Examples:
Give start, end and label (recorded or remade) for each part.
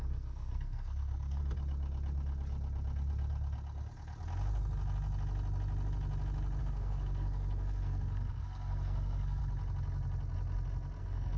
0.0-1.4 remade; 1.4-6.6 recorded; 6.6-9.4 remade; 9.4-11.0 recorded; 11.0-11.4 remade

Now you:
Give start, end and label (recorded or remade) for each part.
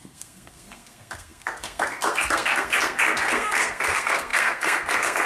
0.0-5.3 remade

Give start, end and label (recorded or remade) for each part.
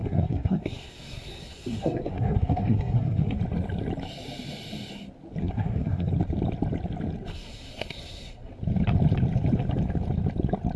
0.0-3.4 remade; 3.4-5.4 recorded; 5.4-6.1 remade; 6.1-7.3 recorded; 7.3-8.5 remade; 8.5-10.8 recorded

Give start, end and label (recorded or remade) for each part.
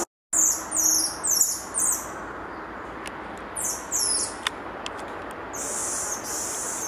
0.0-6.9 recorded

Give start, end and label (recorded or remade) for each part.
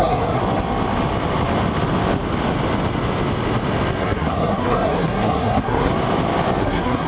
0.0-0.4 remade; 0.4-4.0 recorded; 4.0-5.9 remade; 5.9-6.6 recorded; 6.6-7.1 remade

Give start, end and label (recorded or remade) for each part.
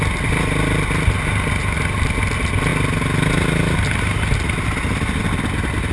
0.0-5.9 recorded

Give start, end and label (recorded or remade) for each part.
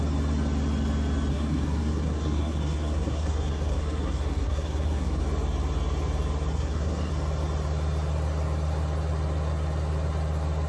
0.0-1.3 recorded; 1.3-5.2 remade; 5.2-6.5 recorded; 6.5-7.1 remade; 7.1-10.7 recorded